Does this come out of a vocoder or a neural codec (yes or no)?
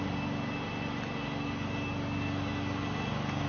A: no